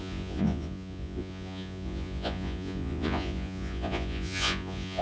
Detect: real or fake fake